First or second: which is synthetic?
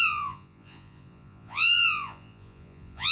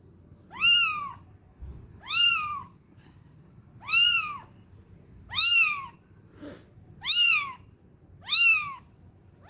first